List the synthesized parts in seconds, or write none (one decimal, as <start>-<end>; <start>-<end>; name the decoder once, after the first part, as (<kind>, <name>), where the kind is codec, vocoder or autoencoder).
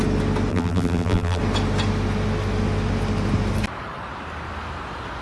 0.5-1.4 (vocoder, BigVGAN v2)